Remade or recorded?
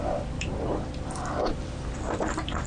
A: recorded